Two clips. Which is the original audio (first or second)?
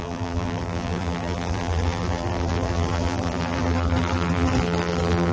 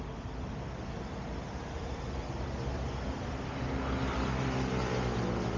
second